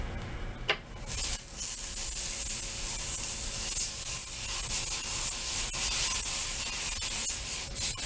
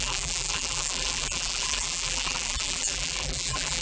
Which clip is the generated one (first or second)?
second